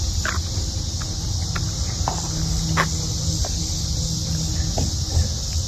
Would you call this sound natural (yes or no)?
yes